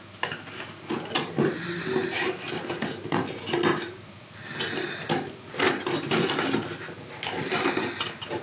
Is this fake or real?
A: real